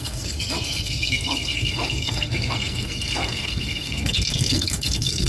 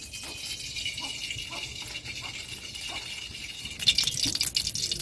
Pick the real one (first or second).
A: second